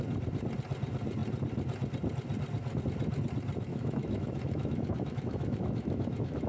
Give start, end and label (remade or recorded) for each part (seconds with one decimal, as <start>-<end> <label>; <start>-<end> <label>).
0.0-3.7 recorded; 3.7-6.5 remade

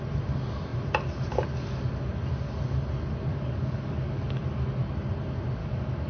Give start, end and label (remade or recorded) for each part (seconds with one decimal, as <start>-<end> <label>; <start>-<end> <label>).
0.0-3.3 recorded; 3.3-4.4 remade; 4.4-5.6 recorded; 5.6-6.1 remade

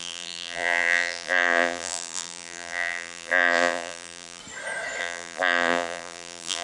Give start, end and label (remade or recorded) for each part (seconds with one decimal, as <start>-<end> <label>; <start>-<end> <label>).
0.0-4.4 remade; 4.4-5.0 recorded; 5.0-6.6 remade

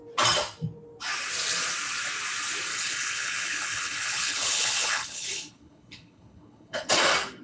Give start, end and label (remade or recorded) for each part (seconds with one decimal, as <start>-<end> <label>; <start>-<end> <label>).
0.0-2.7 recorded; 2.7-6.9 remade; 6.9-7.4 recorded

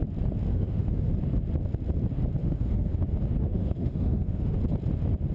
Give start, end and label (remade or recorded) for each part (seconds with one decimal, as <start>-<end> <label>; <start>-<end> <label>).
0.0-0.5 recorded; 0.5-1.1 remade; 1.1-2.4 recorded; 2.4-3.0 remade; 3.0-3.4 recorded; 3.4-4.6 remade; 4.6-5.3 recorded

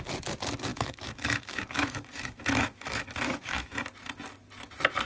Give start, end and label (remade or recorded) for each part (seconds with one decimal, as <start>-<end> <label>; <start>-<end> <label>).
0.0-0.7 recorded; 0.7-3.8 remade; 3.8-5.1 recorded

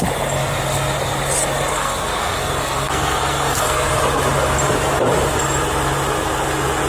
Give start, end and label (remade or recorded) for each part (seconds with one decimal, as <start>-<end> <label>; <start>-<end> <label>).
0.0-1.7 recorded; 1.7-3.9 remade; 3.9-6.9 recorded

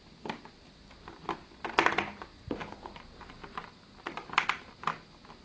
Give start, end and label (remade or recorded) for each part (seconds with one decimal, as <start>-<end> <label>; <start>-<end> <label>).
0.0-5.4 recorded